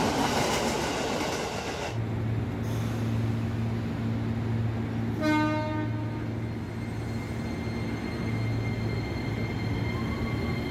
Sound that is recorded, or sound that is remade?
recorded